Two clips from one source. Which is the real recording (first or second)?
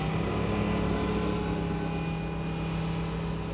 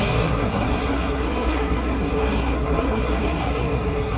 first